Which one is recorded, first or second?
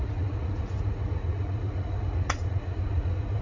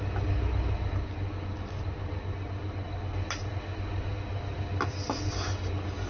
second